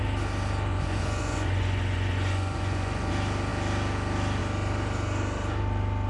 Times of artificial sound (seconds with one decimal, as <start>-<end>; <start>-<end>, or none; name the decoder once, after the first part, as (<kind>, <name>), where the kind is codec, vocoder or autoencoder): 0.7-3.1 (vocoder, Vocos)